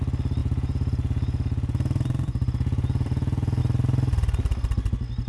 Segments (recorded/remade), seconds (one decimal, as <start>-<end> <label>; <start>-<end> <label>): 0.0-0.4 recorded; 0.4-3.6 remade; 3.6-5.3 recorded